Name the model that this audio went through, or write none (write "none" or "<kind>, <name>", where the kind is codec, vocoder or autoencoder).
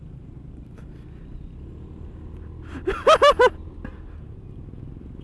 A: none